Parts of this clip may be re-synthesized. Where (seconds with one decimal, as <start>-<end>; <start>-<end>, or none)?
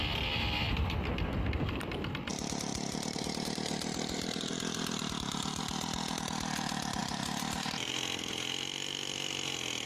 2.3-5.6; 7.0-7.9